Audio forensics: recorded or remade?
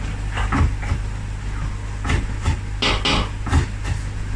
recorded